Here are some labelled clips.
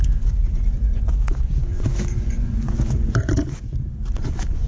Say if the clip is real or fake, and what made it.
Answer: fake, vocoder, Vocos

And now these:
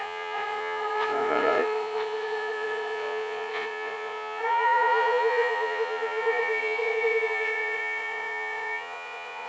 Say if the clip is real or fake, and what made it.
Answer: fake, vocoder, Vocos